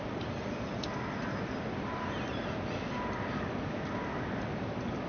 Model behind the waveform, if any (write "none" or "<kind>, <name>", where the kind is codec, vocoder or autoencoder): none